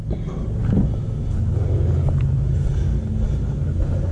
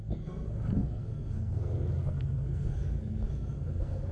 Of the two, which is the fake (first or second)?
second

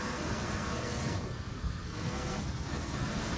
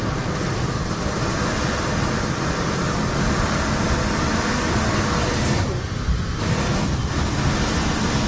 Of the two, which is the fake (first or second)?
first